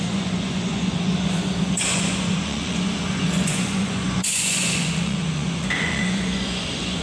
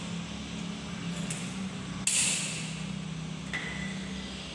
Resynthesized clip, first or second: first